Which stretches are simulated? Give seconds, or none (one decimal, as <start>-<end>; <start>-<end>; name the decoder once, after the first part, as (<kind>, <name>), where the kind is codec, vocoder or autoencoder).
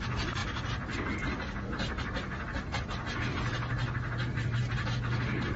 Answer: none